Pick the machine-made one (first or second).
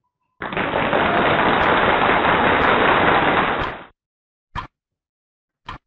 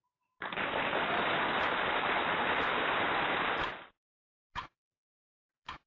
second